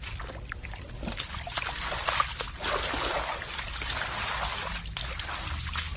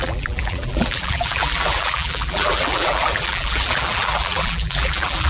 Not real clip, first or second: second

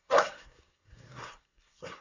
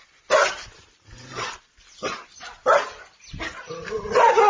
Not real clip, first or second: first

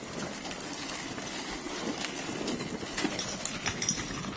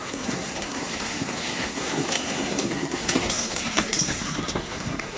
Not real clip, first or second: second